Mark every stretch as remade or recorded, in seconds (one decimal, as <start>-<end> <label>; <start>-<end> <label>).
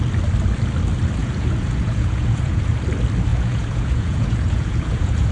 0.0-1.2 recorded; 1.2-2.7 remade; 2.7-3.3 recorded; 3.3-5.3 remade